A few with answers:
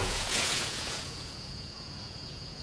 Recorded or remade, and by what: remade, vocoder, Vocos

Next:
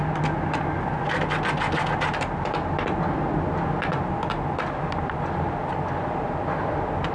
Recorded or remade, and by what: recorded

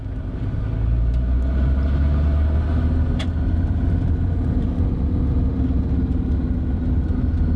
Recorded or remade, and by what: recorded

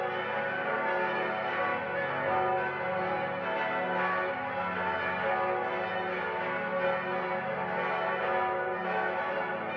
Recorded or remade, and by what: recorded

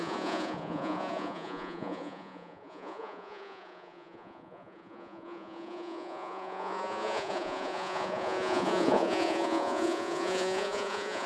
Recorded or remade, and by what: remade, vocoder, Vocos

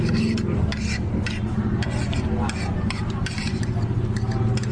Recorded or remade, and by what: recorded